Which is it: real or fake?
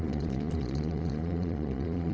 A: fake